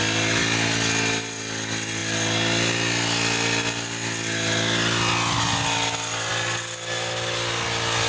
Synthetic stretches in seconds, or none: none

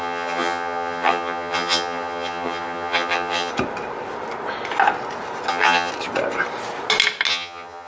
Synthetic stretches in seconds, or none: 0.0-3.5 (vocoder, HiFi-GAN); 5.5-5.9; 7.3-7.9